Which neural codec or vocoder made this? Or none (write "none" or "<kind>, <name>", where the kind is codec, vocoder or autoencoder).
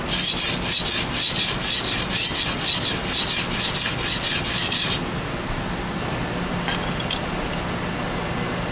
none